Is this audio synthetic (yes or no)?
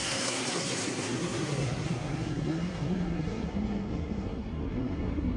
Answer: yes